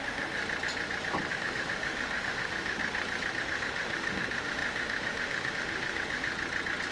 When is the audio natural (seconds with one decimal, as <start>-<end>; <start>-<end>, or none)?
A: 0.4-1.3; 2.8-3.3; 6.3-6.9